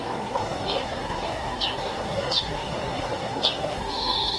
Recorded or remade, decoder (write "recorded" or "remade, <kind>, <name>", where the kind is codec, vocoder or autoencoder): remade, codec, SNAC